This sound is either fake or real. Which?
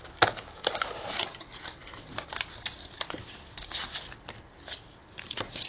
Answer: real